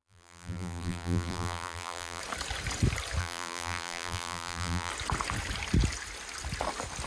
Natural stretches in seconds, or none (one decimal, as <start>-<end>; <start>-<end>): 2.2-3.2; 4.9-7.1